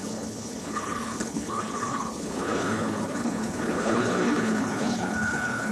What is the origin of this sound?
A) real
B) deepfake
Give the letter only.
B